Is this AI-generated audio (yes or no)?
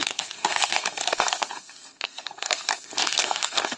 yes